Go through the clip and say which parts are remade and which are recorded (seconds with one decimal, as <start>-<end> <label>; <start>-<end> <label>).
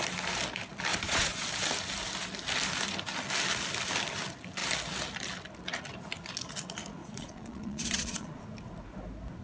0.0-0.9 recorded; 0.9-1.5 remade; 1.5-7.0 recorded; 7.0-8.4 remade; 8.4-9.4 recorded